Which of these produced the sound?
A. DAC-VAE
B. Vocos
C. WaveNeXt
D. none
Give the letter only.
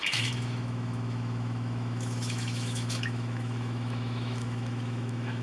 A